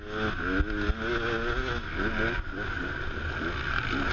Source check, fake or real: real